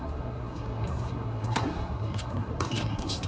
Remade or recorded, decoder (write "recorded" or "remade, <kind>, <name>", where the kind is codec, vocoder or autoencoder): remade, codec, SNAC